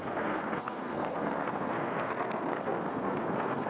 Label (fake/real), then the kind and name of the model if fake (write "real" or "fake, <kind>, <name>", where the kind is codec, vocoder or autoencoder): fake, codec, SNAC